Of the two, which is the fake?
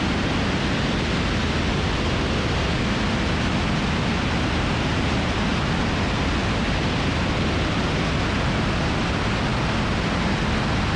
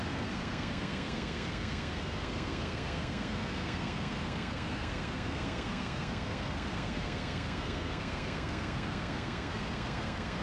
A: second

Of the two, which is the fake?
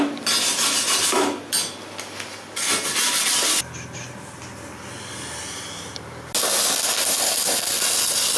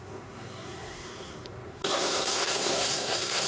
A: second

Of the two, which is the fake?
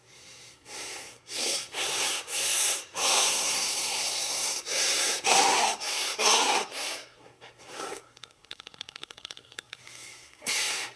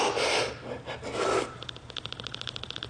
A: first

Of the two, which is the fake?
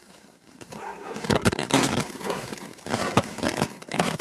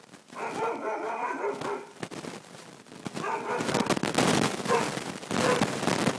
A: first